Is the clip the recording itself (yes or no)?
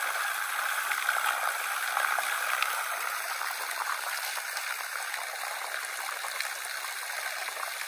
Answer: yes